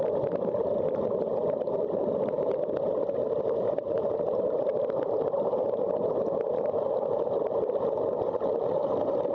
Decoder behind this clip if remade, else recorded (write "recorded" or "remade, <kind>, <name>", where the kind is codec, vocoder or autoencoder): remade, vocoder, BigVGAN v2